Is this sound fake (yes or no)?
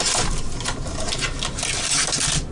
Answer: no